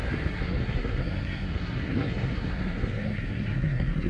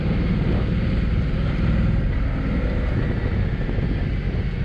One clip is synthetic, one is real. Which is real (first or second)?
second